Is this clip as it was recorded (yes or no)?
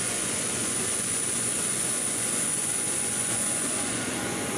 no